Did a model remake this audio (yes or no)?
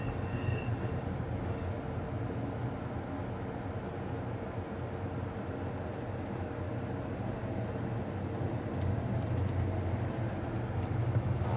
no